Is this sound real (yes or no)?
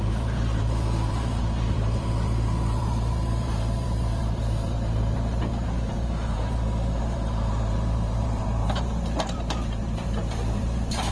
no